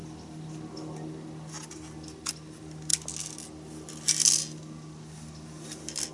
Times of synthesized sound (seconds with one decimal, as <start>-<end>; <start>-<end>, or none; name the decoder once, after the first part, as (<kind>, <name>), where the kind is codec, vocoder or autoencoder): none